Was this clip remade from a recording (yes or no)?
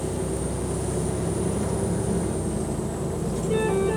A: no